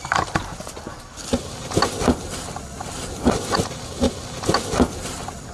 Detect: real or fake fake